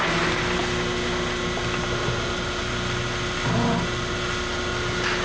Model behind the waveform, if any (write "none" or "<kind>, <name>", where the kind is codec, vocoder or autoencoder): none